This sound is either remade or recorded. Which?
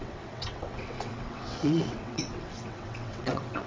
remade